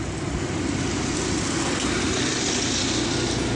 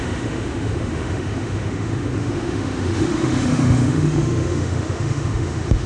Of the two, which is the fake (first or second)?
second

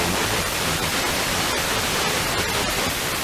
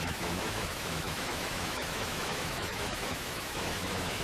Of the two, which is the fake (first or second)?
second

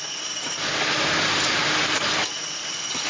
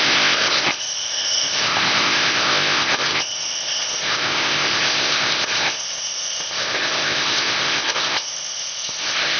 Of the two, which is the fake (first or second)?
second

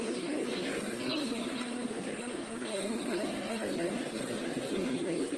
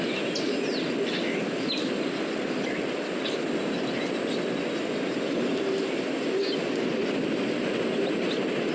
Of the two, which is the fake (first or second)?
first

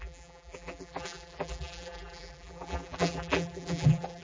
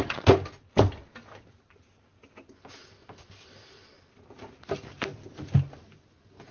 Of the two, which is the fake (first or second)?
first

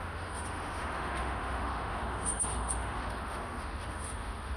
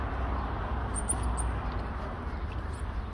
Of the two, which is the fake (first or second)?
first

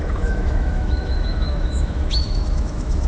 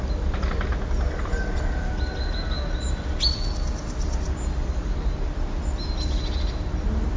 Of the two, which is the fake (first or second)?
first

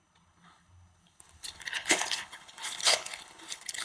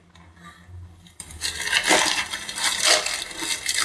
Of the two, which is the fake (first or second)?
first